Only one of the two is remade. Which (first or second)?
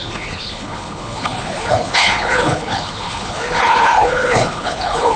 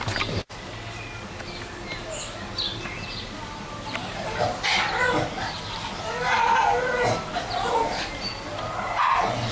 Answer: first